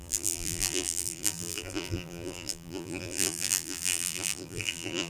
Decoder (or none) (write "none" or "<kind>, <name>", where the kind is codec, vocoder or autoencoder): vocoder, BigVGAN v2